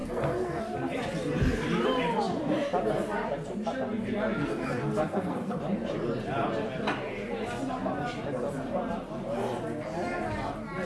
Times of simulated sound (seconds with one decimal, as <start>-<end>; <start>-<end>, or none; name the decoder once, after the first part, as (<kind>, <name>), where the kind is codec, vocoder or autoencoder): 0.0-0.6 (codec, SNAC); 4.4-5.6